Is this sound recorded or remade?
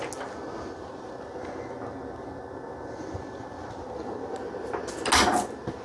recorded